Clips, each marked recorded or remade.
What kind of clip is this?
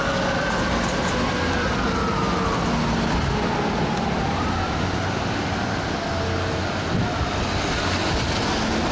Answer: recorded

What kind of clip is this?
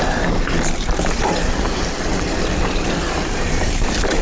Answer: remade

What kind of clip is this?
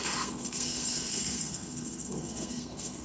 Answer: remade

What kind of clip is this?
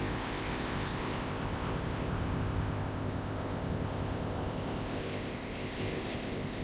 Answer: remade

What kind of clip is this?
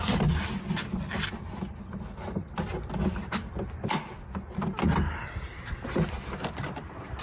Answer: recorded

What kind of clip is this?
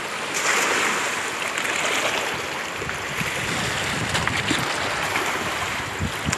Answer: recorded